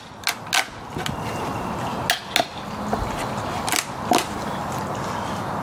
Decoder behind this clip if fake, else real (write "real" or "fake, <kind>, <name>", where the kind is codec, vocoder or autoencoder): real